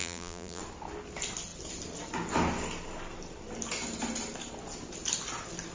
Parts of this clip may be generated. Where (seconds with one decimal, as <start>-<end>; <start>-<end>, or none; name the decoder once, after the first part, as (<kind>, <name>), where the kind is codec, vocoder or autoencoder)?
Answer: 0.0-0.6 (vocoder, BigVGAN v2)